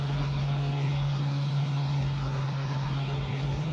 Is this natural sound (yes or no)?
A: no